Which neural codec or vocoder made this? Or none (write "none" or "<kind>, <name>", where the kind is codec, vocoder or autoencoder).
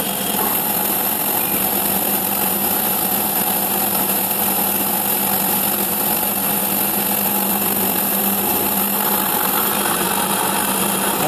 none